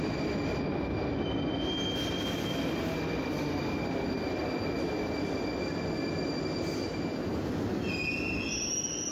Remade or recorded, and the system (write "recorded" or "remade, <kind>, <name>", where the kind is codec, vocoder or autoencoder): recorded